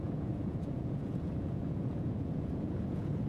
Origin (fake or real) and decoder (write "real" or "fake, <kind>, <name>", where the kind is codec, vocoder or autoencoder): fake, vocoder, Vocos